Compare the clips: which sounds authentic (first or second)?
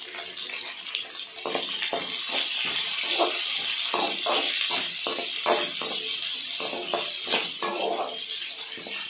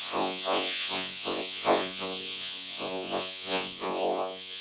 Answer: first